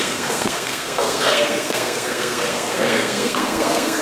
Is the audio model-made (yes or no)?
yes